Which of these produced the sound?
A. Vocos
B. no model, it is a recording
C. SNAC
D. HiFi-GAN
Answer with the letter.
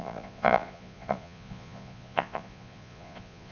A